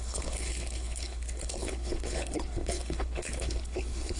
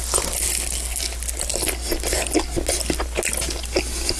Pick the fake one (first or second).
first